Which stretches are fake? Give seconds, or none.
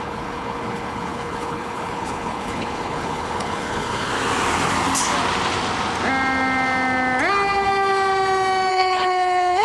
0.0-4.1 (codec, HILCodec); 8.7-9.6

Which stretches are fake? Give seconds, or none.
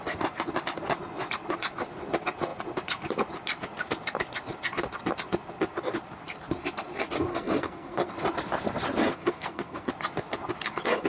7.3-8.1 (codec, SNAC); 9.1-9.9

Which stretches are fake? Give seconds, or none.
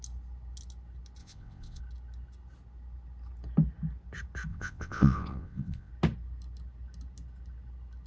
1.2-1.8 (vocoder, WaveNeXt); 4.5-5.9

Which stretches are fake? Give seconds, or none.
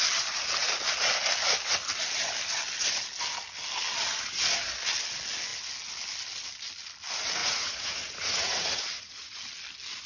7.4-9.4 (vocoder, Vocos)